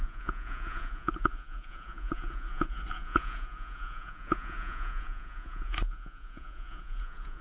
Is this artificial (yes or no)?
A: yes